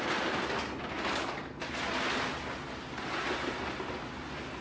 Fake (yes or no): no